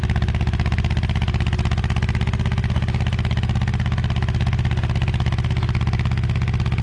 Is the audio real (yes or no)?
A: yes